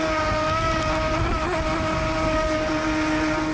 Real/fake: real